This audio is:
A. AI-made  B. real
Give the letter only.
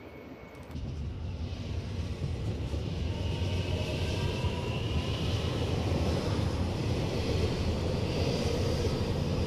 B